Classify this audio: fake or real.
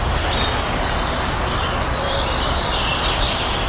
fake